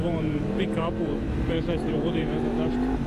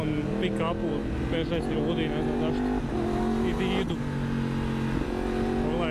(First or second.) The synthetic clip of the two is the first